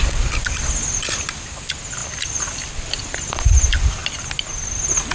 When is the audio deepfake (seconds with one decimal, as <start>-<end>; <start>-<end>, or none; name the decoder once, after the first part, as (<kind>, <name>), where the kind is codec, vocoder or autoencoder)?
none